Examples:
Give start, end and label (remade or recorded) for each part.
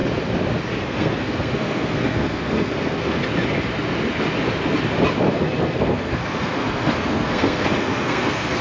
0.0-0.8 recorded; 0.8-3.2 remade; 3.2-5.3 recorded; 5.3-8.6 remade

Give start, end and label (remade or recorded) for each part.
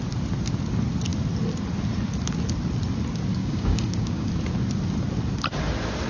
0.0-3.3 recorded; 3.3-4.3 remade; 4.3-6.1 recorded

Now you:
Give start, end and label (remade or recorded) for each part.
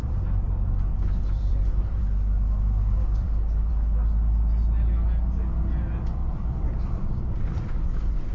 0.0-2.0 remade; 2.0-3.0 recorded; 3.0-3.7 remade; 3.7-6.2 recorded; 6.2-7.1 remade; 7.1-8.3 recorded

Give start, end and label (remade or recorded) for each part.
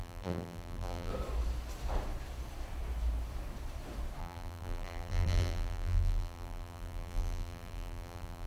0.0-1.1 remade; 1.1-4.2 recorded; 4.2-8.5 remade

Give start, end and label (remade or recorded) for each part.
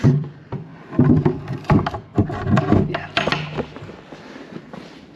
0.0-0.7 remade; 0.7-1.5 recorded; 1.5-2.1 remade; 2.1-4.6 recorded; 4.6-5.2 remade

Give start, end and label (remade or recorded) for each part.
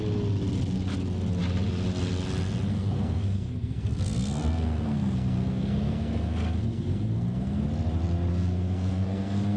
0.0-2.7 recorded; 2.7-7.6 remade; 7.6-8.3 recorded; 8.3-9.6 remade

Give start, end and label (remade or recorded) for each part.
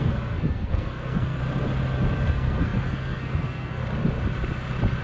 0.0-1.4 remade; 1.4-2.3 recorded; 2.3-3.8 remade; 3.8-5.0 recorded